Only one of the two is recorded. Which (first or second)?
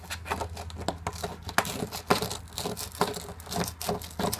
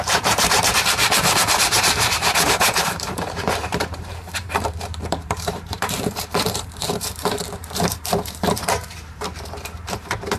first